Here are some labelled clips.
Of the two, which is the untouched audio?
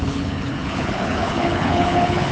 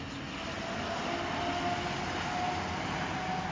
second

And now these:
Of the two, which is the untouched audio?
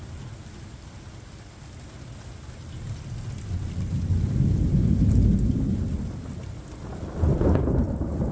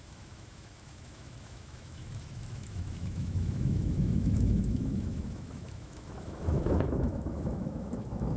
first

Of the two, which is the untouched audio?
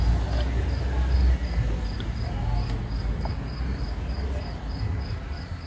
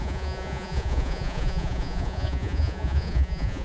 first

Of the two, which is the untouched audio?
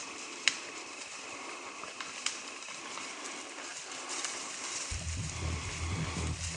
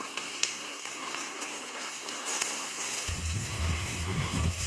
first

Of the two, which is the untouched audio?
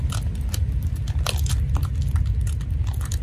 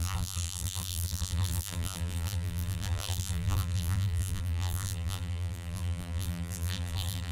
first